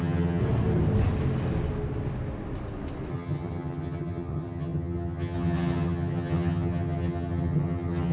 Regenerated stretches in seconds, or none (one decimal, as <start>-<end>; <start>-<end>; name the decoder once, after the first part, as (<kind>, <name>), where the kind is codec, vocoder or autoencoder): 0.0-0.4 (vocoder, HiFi-GAN); 3.1-8.1